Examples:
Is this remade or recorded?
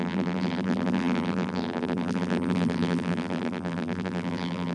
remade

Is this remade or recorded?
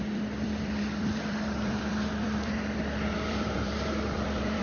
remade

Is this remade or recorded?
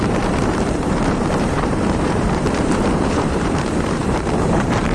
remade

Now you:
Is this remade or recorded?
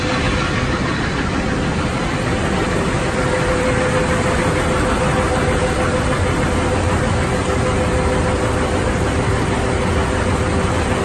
recorded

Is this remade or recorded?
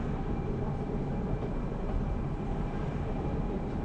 remade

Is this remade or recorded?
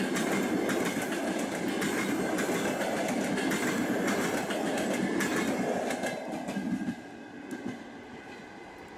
recorded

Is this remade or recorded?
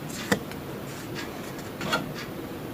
recorded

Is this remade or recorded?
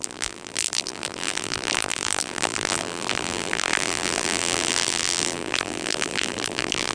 remade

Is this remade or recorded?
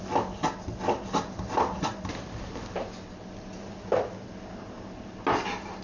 recorded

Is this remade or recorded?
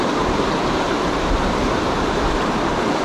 remade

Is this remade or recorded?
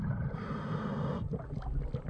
recorded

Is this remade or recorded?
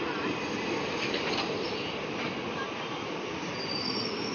remade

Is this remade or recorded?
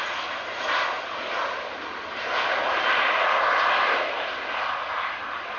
recorded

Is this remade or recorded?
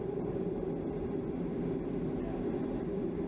remade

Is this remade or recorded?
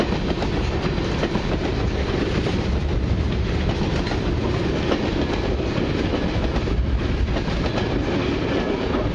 recorded